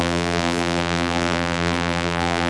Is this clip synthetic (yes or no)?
yes